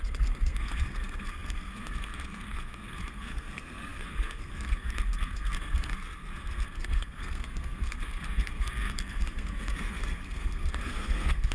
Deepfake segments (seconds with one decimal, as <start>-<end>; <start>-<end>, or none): 0.0-11.5